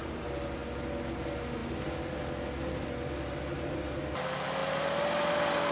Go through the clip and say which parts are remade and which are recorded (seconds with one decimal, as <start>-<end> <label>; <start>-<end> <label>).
0.0-5.7 recorded